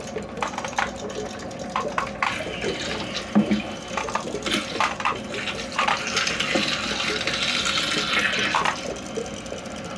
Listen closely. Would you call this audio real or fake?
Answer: real